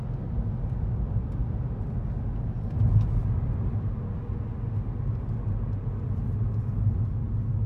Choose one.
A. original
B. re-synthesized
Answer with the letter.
A